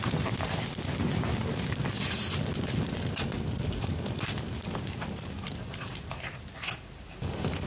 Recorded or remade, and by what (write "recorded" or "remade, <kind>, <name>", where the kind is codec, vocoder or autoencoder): recorded